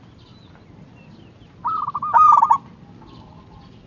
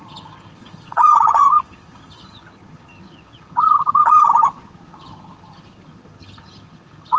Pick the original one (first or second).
first